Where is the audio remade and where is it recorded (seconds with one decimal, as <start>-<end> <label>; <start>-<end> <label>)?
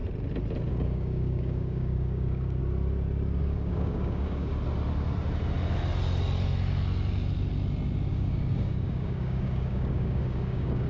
0.0-0.7 recorded; 0.7-2.6 remade; 2.6-3.4 recorded; 3.4-4.5 remade; 4.5-8.1 recorded; 8.1-10.9 remade